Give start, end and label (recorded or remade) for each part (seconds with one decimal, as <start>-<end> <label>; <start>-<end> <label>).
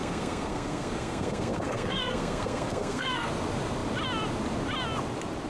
0.0-3.3 remade; 3.3-5.5 recorded